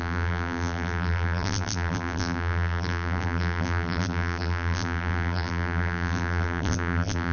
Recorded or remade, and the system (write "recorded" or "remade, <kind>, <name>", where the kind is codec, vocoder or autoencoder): remade, vocoder, BigVGAN v2